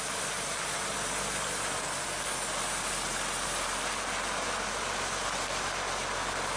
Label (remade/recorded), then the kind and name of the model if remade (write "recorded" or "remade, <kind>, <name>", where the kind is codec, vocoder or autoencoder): recorded